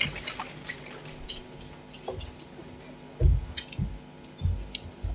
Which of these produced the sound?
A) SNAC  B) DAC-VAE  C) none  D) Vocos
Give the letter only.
C